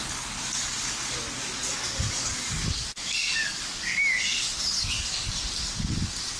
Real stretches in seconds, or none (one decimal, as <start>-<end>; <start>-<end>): 1.1-1.6; 5.4-6.4